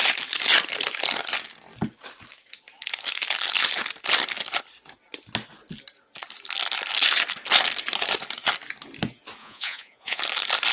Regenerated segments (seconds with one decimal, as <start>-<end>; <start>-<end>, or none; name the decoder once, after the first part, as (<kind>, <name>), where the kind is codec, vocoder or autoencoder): 9.4-10.2 (vocoder, Vocos)